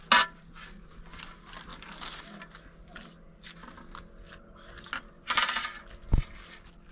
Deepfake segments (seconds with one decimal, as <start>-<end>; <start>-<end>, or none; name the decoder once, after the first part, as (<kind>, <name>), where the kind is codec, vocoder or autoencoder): none